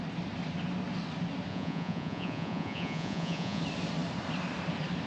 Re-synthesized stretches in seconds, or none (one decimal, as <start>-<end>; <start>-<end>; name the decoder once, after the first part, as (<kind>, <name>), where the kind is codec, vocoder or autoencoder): 1.5-3.6 (vocoder, Vocos)